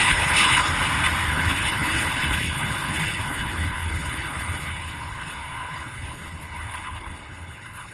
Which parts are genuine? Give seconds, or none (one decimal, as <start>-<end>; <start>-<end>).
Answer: 0.7-1.3